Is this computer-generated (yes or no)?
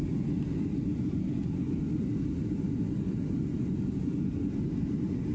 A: no